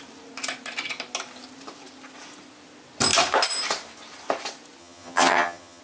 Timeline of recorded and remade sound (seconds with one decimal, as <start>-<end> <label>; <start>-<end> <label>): 0.0-4.8 recorded; 4.8-5.8 remade